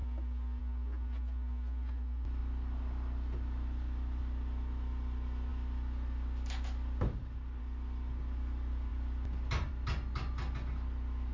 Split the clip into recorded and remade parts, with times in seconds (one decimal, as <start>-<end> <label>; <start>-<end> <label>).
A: 0.0-11.3 recorded